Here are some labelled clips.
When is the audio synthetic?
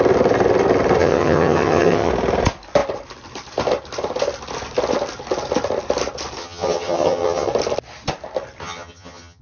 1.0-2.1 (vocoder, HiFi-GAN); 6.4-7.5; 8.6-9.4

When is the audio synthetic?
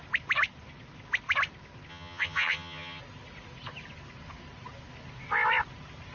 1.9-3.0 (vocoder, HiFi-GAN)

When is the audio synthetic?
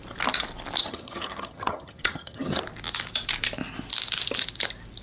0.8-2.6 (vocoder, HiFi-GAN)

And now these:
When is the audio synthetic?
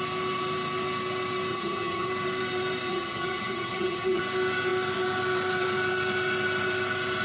1.5-2.1 (vocoder, HiFi-GAN); 2.9-4.2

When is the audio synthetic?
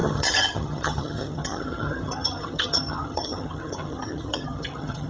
0.0-5.1 (vocoder, HiFi-GAN)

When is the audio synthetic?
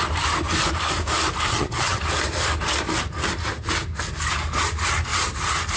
1.5-2.0 (vocoder, HiFi-GAN)